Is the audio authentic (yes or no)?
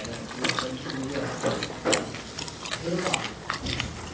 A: yes